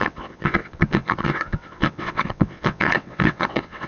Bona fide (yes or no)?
no